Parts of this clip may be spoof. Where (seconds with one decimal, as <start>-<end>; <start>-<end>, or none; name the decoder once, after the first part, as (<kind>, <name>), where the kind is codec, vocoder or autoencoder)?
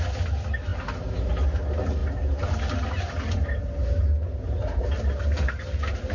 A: none